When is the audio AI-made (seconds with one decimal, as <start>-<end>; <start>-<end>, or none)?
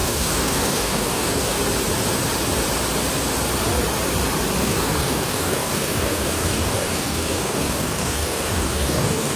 0.0-1.6; 4.6-9.4